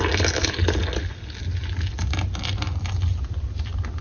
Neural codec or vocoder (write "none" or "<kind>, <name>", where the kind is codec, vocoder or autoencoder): none